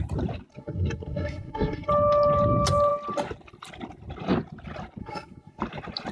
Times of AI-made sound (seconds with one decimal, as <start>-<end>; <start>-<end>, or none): 0.5-1.9; 5.0-5.6